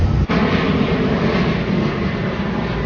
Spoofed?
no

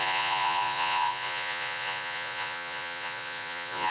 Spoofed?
yes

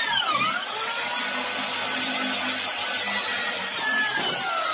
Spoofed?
no